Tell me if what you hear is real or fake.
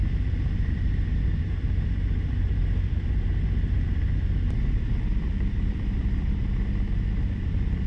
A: fake